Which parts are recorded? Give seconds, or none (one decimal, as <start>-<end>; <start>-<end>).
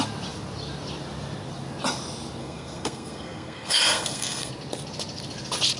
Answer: 0.0-2.4; 4.5-5.8